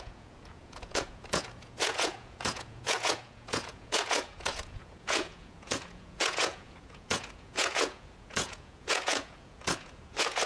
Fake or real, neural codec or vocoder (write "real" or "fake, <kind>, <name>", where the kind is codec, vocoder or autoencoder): fake, vocoder, Vocos